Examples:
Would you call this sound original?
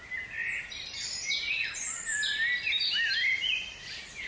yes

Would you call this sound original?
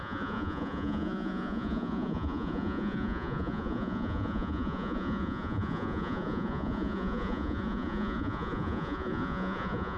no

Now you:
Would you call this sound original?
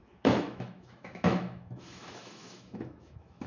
no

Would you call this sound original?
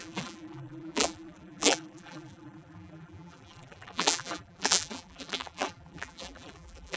no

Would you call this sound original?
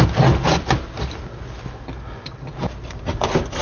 yes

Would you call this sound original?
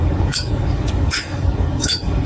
no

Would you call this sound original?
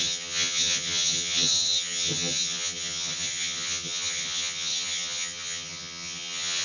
no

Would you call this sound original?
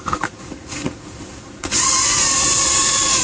no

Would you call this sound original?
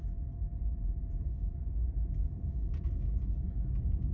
no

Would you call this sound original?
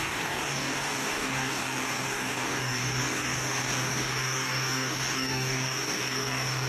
no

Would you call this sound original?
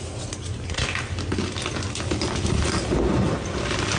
yes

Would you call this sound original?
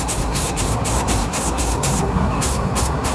no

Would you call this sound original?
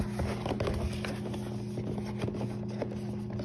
yes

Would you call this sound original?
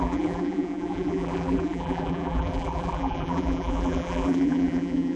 no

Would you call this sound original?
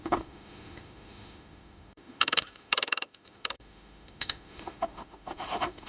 no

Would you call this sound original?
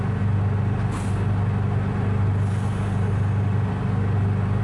yes